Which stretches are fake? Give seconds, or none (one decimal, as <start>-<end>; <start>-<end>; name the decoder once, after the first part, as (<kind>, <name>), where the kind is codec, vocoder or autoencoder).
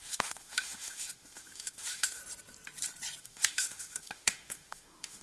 0.0-2.2 (autoencoder, DAC-VAE); 3.2-5.2